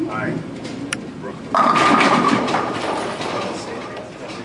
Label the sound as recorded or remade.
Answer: remade